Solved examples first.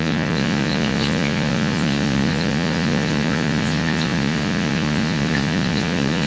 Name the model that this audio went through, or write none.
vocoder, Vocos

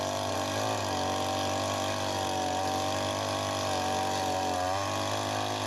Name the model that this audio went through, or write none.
none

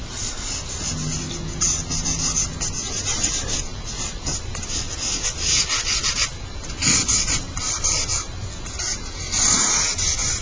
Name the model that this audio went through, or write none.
none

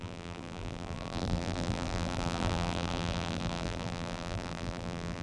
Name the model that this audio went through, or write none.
vocoder, BigVGAN v2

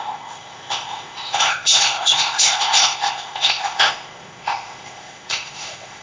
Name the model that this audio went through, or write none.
codec, ZipCodec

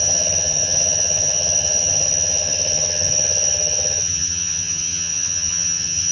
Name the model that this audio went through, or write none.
vocoder, HiFi-GAN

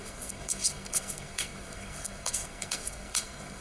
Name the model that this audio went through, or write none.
codec, SNAC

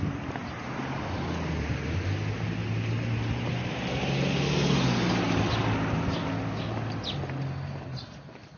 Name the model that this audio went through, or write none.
none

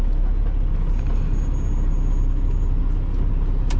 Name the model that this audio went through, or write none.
none